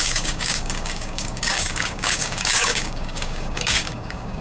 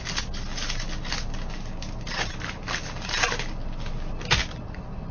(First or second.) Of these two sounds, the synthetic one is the first